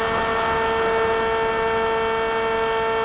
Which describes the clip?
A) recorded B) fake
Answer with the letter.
A